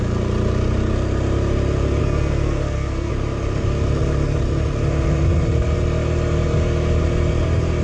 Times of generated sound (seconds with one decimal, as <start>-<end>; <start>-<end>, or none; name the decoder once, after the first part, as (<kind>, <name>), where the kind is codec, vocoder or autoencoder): 2.0-3.1 (codec, SNAC)